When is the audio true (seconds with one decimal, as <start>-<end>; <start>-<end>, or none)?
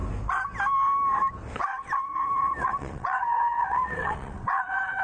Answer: 0.0-1.7